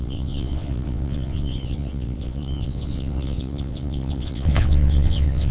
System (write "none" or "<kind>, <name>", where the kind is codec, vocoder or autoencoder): vocoder, WaveNeXt